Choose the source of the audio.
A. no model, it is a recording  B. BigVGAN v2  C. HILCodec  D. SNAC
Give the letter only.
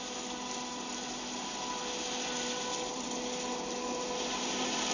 B